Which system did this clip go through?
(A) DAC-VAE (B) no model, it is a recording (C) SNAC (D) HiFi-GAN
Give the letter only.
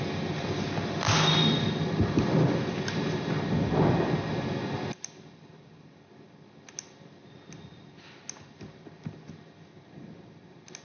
B